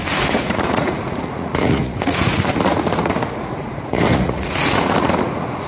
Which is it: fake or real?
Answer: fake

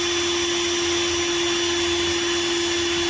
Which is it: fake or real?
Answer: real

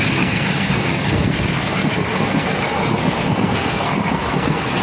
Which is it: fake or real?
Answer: fake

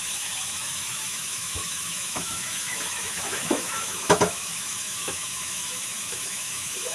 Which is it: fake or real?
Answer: fake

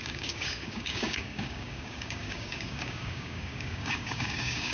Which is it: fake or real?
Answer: fake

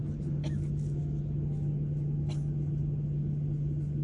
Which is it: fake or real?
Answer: real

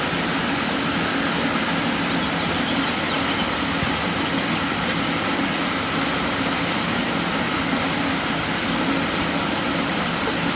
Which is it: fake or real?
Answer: real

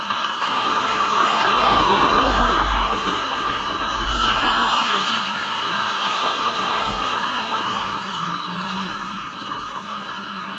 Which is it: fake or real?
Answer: fake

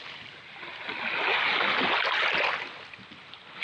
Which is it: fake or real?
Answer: real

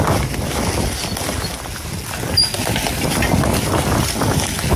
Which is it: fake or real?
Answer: real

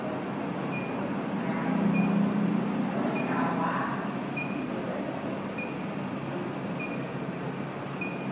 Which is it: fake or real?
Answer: real